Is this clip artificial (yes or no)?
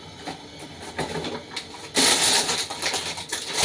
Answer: no